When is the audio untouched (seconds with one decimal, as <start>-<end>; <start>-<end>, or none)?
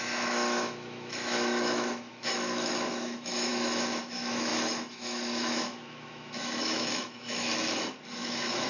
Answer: 7.5-8.1